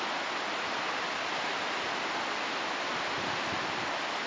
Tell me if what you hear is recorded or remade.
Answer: recorded